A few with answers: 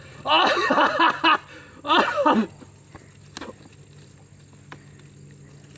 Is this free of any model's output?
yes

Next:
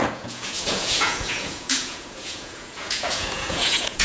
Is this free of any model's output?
no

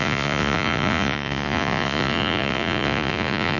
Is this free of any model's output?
no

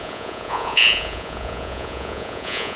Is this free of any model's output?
no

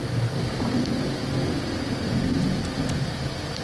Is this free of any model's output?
yes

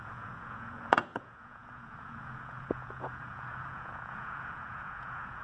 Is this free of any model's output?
no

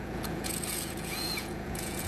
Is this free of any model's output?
no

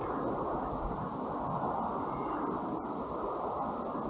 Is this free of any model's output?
yes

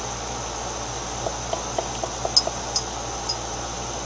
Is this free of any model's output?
yes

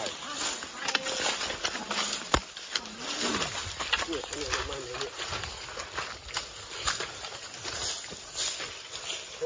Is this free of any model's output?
yes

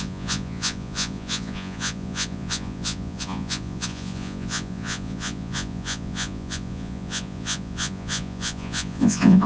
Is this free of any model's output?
no